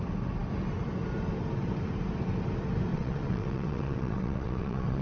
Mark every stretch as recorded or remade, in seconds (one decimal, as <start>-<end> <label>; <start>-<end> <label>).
0.0-2.9 recorded; 2.9-5.0 remade